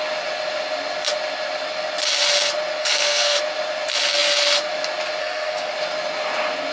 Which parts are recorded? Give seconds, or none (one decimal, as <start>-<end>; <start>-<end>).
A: 0.0-2.8; 3.4-5.2; 5.7-6.7